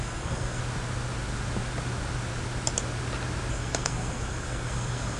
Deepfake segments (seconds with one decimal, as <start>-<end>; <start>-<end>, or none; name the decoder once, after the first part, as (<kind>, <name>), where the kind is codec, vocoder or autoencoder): 0.0-0.6 (codec, SNAC); 3.5-5.2